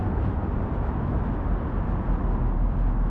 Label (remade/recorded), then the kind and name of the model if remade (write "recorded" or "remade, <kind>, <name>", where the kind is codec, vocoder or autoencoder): recorded